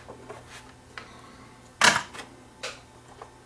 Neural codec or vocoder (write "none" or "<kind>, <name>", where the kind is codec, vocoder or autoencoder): none